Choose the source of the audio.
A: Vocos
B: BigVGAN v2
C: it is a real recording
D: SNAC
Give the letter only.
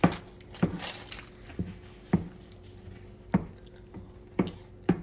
C